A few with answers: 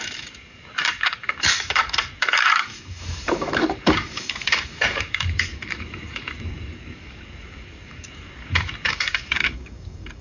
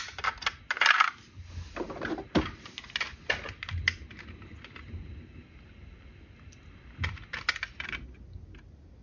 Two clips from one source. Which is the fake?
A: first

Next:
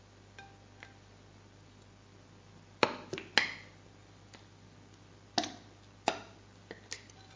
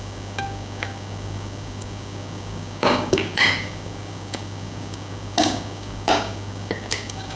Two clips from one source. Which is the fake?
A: second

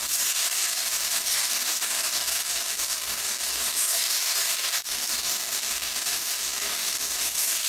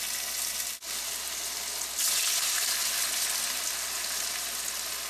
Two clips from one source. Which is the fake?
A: first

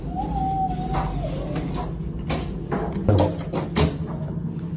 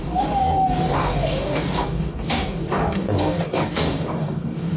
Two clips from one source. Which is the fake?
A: second